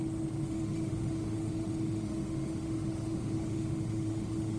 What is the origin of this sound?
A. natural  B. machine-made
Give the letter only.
B